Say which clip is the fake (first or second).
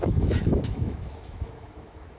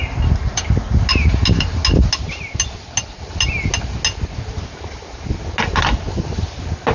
first